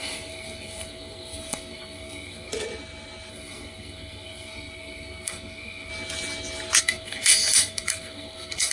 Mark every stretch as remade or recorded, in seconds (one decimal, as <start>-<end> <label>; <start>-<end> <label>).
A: 0.0-2.5 remade; 2.5-3.3 recorded; 3.3-5.9 remade; 5.9-6.8 recorded; 6.8-8.7 remade